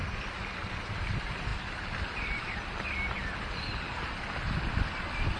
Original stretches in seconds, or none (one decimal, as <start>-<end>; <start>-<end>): 0.0-5.4